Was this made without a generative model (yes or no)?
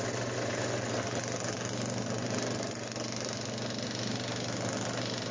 yes